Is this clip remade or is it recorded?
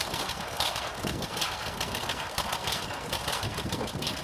remade